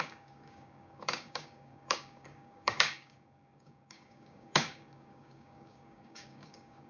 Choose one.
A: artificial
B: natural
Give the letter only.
A